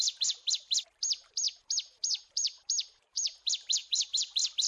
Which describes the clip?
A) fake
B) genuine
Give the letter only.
A